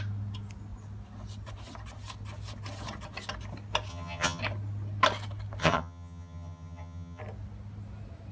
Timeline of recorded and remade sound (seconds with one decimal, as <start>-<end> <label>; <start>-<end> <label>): 0.0-3.9 recorded; 3.9-4.4 remade; 4.4-5.6 recorded; 5.6-7.2 remade; 7.2-8.3 recorded

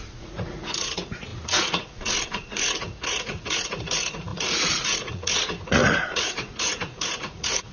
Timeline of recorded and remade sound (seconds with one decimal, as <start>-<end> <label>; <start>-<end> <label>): 0.0-7.7 remade